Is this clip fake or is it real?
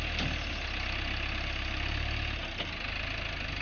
real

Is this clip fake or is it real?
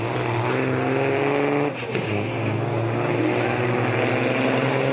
real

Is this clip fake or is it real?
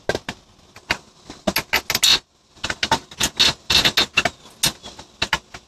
real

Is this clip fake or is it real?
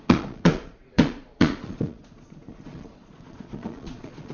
fake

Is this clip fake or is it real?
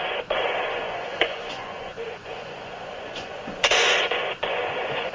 fake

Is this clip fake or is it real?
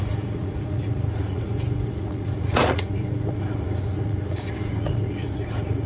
fake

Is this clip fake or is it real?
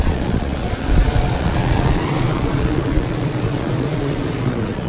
fake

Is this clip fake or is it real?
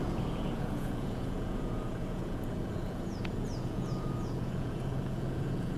fake